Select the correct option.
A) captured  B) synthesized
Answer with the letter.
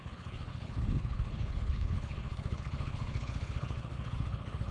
B